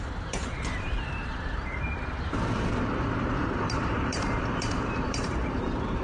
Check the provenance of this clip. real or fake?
fake